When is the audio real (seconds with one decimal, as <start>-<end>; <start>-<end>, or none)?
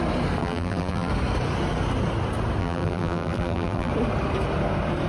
0.0-0.4; 1.1-2.6; 3.9-5.1